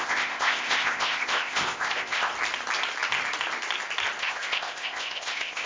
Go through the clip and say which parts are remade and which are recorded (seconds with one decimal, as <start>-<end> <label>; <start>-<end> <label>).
0.0-2.3 remade; 2.3-4.2 recorded; 4.2-5.7 remade